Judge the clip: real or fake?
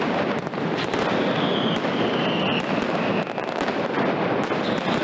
real